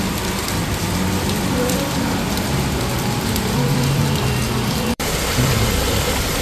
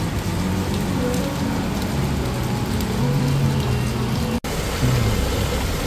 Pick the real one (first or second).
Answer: second